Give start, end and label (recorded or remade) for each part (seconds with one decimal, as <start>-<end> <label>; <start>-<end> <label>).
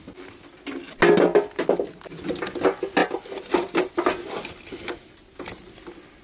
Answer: 0.0-6.2 recorded